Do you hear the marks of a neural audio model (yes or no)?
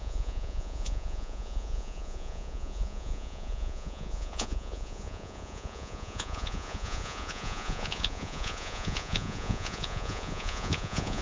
yes